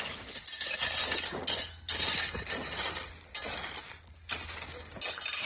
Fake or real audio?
real